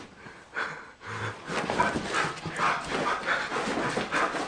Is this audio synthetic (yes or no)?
no